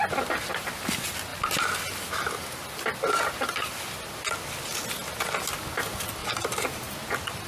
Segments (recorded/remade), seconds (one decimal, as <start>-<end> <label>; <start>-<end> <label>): 0.0-6.2 recorded; 6.2-7.5 remade

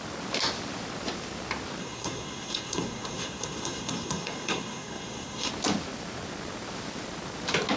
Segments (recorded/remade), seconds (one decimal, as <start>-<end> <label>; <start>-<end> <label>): 0.0-1.8 recorded; 1.8-5.5 remade; 5.5-7.8 recorded

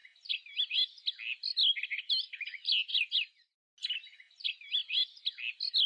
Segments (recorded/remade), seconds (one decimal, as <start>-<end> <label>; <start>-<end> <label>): 0.0-5.9 recorded